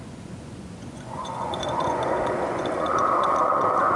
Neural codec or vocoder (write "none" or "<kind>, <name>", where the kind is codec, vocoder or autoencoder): vocoder, Vocos